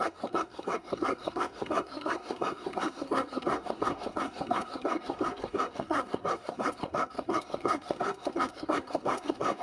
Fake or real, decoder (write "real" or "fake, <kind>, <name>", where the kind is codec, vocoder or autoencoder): fake, codec, SNAC